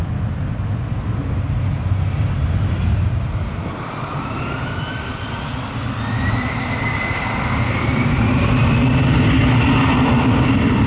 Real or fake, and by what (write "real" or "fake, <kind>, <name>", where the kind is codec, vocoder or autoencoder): real